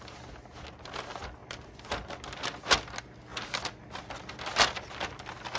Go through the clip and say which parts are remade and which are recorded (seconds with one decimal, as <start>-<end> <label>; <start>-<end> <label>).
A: 0.0-5.6 recorded